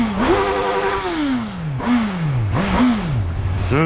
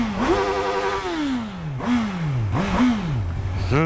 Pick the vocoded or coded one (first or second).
first